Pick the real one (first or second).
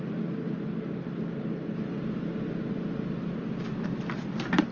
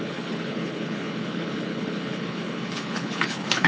first